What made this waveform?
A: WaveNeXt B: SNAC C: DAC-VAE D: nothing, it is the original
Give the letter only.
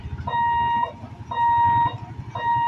D